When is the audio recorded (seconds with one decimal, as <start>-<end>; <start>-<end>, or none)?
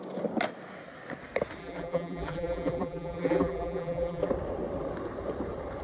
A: 0.0-1.6; 4.3-5.8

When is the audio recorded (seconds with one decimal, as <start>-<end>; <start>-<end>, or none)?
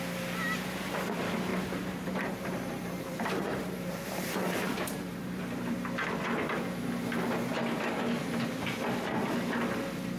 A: 0.0-1.5; 5.4-10.2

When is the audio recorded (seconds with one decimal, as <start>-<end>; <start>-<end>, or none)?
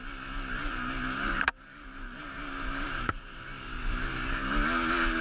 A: 0.0-0.7; 3.8-5.2